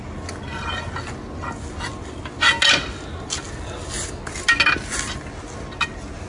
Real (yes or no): yes